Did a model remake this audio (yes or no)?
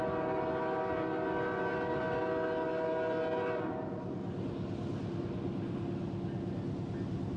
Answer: no